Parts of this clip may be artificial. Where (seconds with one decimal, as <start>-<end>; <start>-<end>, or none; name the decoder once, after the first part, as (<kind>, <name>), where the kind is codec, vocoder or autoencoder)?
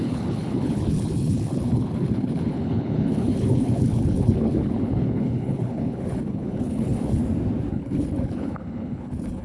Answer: 0.0-7.2 (codec, HILCodec); 7.7-9.4